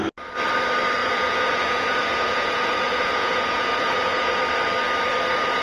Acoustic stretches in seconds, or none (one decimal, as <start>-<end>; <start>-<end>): 0.0-1.0; 4.4-5.6